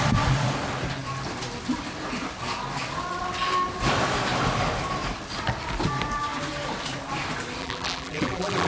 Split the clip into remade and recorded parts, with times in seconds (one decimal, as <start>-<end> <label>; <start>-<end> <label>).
0.0-7.6 recorded; 7.6-8.7 remade